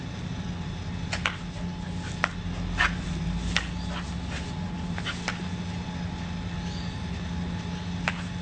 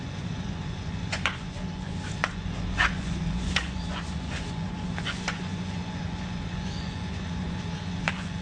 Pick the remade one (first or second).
second